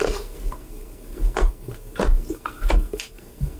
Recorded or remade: remade